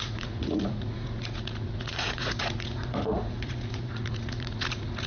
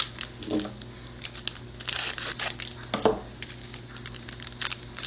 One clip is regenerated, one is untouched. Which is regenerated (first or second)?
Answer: first